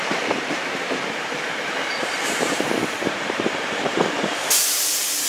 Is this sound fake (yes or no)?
yes